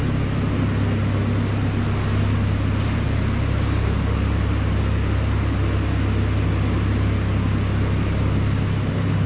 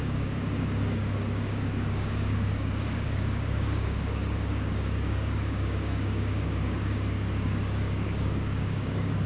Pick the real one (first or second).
first